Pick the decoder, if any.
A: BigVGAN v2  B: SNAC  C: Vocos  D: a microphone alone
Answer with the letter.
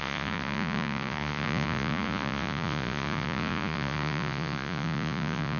C